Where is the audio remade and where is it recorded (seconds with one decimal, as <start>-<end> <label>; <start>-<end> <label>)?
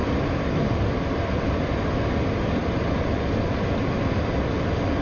0.0-1.9 remade; 1.9-5.0 recorded